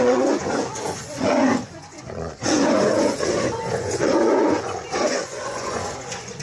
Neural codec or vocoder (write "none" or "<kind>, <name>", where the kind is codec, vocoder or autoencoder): vocoder, Vocos